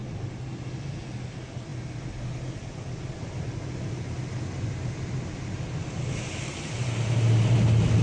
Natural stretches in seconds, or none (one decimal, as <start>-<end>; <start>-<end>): 0.0-8.0